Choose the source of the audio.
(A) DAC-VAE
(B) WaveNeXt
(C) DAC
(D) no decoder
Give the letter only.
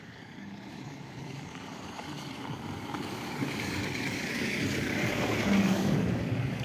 C